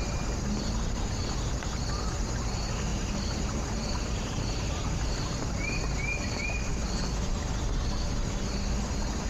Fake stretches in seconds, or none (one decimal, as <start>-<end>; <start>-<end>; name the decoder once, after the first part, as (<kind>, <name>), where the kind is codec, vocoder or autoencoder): 2.9-5.5 (vocoder, BigVGAN v2)